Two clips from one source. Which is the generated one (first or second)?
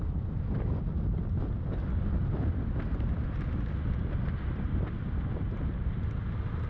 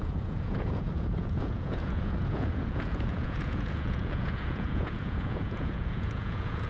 second